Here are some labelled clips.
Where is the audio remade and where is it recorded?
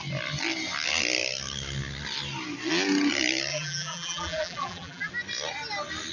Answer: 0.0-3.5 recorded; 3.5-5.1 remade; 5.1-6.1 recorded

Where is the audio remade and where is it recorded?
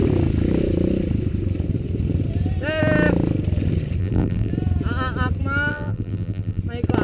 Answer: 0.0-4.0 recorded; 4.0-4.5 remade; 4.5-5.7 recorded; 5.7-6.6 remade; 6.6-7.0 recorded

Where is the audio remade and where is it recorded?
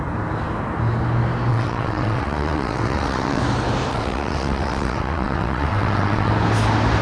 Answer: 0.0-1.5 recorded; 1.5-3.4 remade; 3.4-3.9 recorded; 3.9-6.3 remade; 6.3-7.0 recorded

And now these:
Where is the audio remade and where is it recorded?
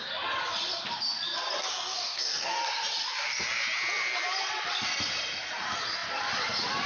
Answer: 0.0-1.7 recorded; 1.7-2.6 remade; 2.6-6.9 recorded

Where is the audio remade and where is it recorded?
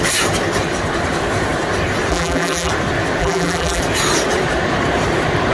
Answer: 0.0-2.1 recorded; 2.1-2.7 remade; 2.7-3.2 recorded; 3.2-3.8 remade; 3.8-5.5 recorded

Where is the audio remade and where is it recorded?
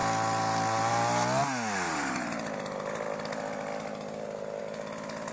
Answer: 0.0-5.3 recorded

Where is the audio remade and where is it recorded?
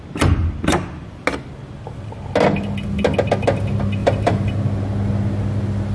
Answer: 0.0-4.0 recorded; 4.0-4.5 remade; 4.5-5.9 recorded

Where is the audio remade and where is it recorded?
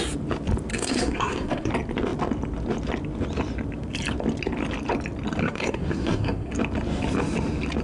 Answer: 0.0-0.7 recorded; 0.7-1.7 remade; 1.7-5.4 recorded; 5.4-6.5 remade; 6.5-7.8 recorded